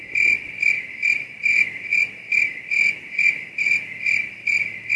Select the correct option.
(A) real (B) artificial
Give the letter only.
A